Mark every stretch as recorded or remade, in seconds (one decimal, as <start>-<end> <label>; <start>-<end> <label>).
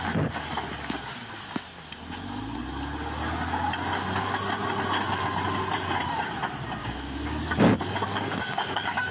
0.0-6.8 recorded; 6.8-9.1 remade